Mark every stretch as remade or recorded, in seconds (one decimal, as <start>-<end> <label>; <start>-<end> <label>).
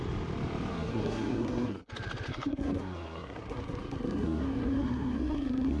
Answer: 0.0-0.7 recorded; 0.7-1.9 remade; 1.9-2.3 recorded; 2.3-5.8 remade